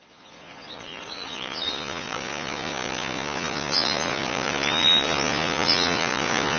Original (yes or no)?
no